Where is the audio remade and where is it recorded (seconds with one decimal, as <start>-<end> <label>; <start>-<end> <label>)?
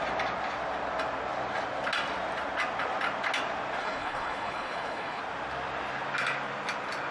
0.0-3.8 recorded; 3.8-5.2 remade; 5.2-7.1 recorded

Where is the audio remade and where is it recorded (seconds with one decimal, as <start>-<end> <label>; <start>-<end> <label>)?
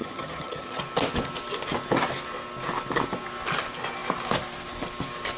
0.0-0.8 remade; 0.8-5.4 recorded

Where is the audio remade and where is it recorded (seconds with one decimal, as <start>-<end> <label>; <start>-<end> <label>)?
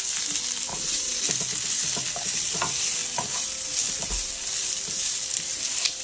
0.0-0.7 recorded; 0.7-1.2 remade; 1.2-6.0 recorded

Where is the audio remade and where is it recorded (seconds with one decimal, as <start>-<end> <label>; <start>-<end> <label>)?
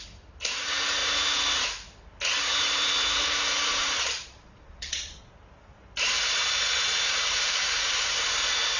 0.0-3.7 recorded; 3.7-5.3 remade; 5.3-8.8 recorded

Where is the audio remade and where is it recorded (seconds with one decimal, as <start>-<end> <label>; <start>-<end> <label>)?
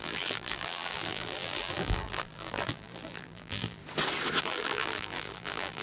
0.0-3.8 remade; 3.8-4.4 recorded; 4.4-5.8 remade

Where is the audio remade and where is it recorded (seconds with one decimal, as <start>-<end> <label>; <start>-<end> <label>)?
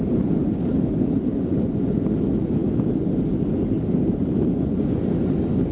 0.0-1.3 recorded; 1.3-2.0 remade; 2.0-4.2 recorded; 4.2-5.0 remade; 5.0-5.7 recorded